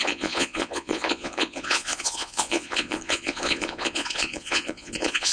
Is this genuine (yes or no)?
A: no